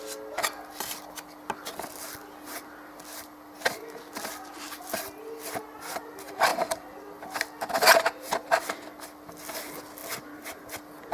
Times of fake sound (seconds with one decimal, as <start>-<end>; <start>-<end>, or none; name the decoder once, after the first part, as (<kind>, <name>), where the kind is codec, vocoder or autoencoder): none